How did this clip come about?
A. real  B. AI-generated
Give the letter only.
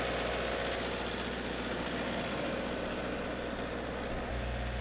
A